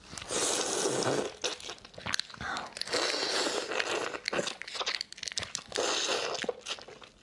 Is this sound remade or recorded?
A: recorded